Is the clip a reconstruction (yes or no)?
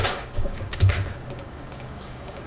yes